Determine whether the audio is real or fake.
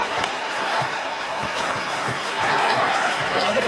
fake